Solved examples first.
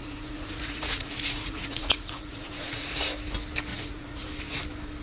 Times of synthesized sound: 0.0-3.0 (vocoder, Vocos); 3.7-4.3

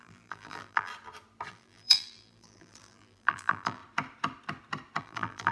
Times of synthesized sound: 0.0-0.9 (vocoder, BigVGAN v2); 1.5-3.8; 5.0-5.5

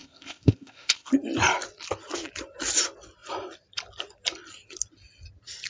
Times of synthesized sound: 0.0-1.1 (codec, ZipCodec)